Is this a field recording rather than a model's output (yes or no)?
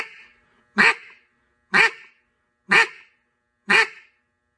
yes